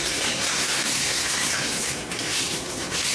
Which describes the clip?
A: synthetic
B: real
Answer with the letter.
A